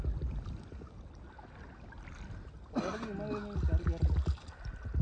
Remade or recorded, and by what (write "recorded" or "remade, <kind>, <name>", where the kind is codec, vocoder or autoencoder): recorded